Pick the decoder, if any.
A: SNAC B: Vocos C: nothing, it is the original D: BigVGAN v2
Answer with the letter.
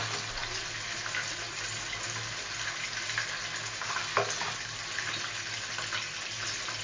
C